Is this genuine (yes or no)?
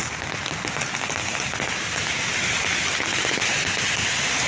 yes